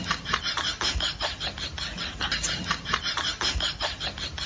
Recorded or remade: recorded